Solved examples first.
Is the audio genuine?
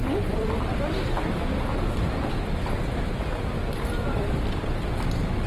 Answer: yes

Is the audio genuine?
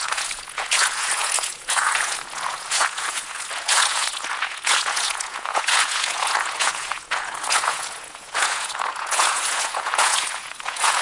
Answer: no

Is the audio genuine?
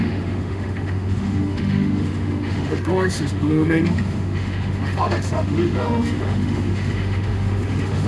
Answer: no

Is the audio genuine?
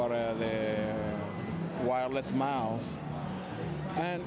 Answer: yes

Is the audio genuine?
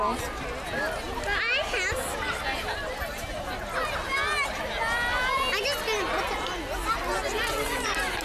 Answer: yes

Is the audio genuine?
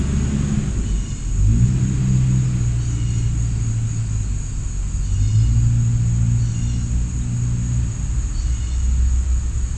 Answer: yes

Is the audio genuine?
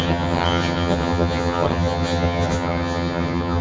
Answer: no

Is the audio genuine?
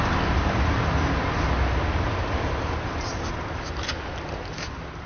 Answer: yes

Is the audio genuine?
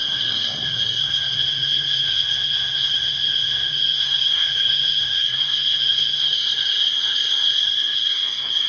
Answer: no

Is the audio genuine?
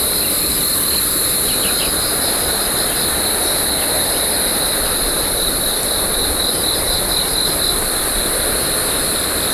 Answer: yes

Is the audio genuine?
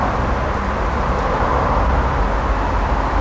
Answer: yes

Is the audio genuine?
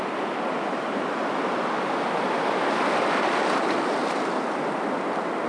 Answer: yes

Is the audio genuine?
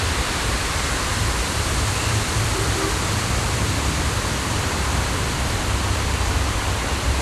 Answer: no